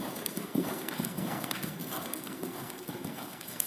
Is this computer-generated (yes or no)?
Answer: yes